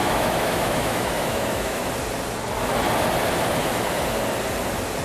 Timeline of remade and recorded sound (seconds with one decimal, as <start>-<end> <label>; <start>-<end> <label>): 0.0-1.9 remade; 1.9-5.0 recorded